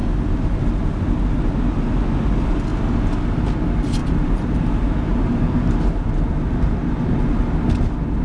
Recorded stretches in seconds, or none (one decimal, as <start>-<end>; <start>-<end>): 0.0-4.0; 4.5-5.1; 6.6-8.2